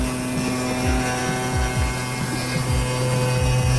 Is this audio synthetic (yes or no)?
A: no